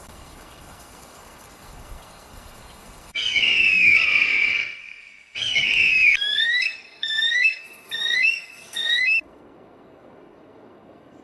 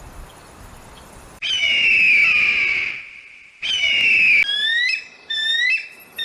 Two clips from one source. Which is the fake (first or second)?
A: first